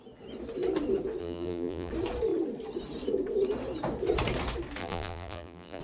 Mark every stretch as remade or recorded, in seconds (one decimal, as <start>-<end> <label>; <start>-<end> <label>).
0.0-1.2 recorded; 1.2-1.9 remade; 1.9-4.8 recorded; 4.8-5.8 remade